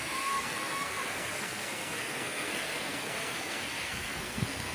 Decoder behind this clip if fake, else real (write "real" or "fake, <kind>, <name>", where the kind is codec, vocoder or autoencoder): fake, codec, SNAC